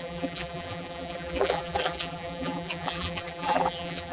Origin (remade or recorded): remade